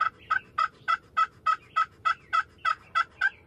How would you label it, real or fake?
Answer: real